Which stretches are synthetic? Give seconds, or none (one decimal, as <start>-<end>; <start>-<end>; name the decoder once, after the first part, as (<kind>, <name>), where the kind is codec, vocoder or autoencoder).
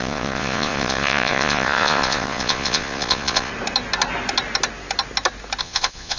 0.0-3.5 (vocoder, Vocos); 5.6-6.2